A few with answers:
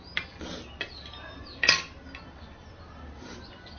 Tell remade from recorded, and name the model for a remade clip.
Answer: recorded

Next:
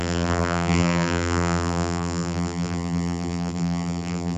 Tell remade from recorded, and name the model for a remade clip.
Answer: remade, vocoder, BigVGAN v2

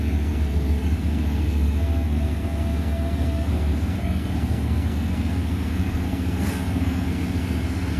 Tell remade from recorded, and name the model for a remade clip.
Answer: remade, codec, SNAC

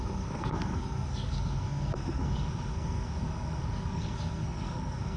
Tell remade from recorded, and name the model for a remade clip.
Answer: remade, codec, SNAC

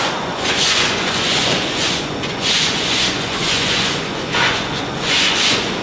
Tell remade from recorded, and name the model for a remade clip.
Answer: remade, vocoder, Vocos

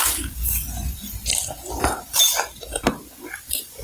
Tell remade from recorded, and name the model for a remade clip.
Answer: remade, vocoder, BigVGAN v2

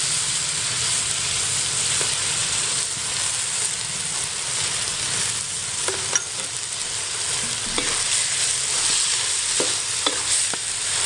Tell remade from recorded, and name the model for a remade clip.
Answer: recorded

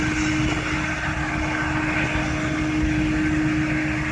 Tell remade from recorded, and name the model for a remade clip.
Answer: recorded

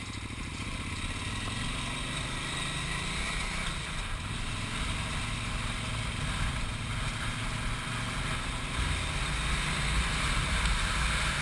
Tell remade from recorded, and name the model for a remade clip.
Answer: recorded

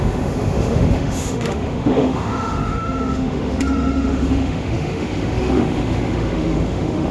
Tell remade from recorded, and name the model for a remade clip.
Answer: remade, autoencoder, DAC-VAE